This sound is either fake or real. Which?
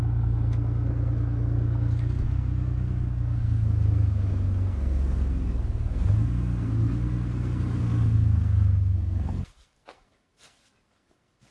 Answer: fake